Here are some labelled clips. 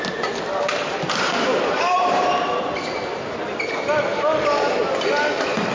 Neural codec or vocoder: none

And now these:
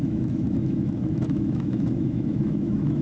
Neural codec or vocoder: autoencoder, DAC-VAE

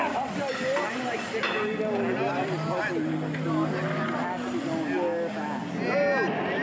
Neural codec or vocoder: none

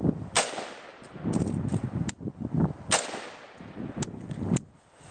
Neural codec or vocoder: none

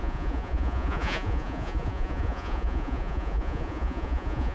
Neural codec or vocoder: vocoder, Vocos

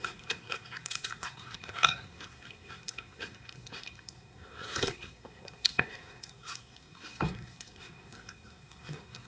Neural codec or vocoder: codec, SNAC